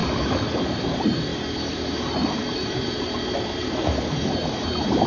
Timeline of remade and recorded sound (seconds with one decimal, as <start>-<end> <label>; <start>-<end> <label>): 0.0-0.6 recorded; 0.6-5.1 remade